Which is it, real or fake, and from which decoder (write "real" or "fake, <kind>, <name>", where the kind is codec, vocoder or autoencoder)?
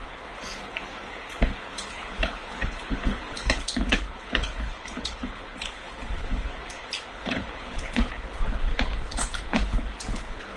fake, codec, HILCodec